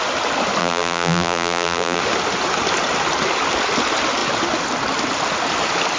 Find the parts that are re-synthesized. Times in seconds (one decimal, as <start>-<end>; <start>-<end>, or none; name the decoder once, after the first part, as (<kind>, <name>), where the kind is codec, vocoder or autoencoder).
0.6-2.0 (vocoder, BigVGAN v2)